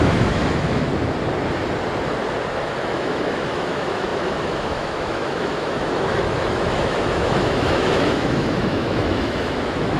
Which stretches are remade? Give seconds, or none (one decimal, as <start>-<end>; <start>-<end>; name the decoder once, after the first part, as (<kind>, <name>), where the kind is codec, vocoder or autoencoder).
0.0-0.9 (autoencoder, DAC-VAE); 2.8-10.0